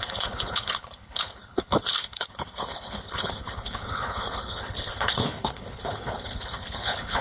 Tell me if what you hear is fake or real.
fake